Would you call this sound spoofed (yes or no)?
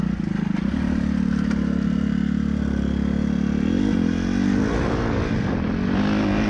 no